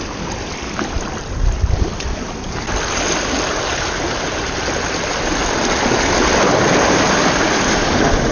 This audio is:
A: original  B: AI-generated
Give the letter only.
A